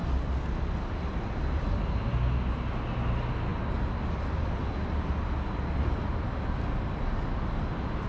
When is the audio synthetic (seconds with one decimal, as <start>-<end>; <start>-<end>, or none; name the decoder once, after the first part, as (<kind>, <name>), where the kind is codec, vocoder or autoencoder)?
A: none